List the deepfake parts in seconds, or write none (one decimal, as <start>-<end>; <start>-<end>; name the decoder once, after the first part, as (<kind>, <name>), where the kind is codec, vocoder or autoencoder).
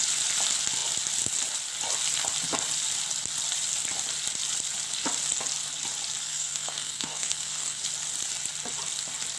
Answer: 6.2-7.8 (codec, SNAC)